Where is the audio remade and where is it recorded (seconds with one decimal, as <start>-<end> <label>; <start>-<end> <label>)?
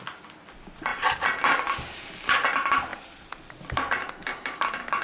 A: 0.0-5.0 recorded